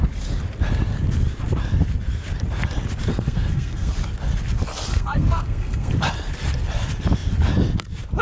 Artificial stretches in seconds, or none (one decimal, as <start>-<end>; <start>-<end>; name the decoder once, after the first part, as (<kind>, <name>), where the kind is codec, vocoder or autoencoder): 3.1-3.9 (codec, SNAC); 4.9-5.9